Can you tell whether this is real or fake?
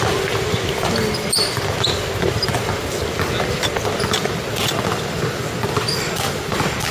real